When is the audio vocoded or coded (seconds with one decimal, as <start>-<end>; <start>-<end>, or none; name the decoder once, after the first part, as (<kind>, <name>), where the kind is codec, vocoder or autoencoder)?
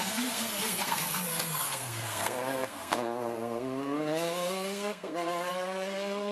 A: 0.0-6.3 (codec, SNAC)